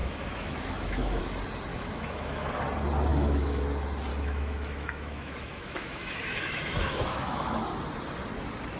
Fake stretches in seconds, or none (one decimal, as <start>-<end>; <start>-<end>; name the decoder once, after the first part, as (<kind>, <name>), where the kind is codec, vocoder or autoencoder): 0.0-1.2 (autoencoder, DAC-VAE); 1.7-2.5; 3.1-3.6; 4.1-7.6

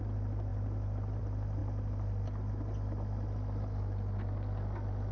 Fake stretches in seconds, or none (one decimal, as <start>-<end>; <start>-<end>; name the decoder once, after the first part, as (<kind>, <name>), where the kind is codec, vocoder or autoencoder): none

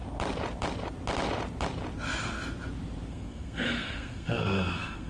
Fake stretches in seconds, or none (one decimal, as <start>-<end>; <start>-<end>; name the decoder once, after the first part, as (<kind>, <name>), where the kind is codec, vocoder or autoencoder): 3.1-5.1 (codec, SNAC)